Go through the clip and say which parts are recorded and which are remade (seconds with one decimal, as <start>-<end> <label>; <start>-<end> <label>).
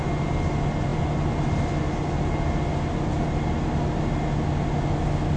0.0-5.4 recorded